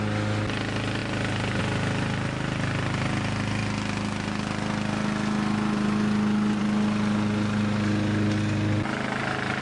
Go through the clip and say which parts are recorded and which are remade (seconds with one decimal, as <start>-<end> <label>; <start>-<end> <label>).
0.0-9.6 recorded